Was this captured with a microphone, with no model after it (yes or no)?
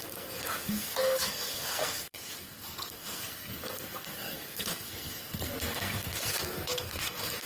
no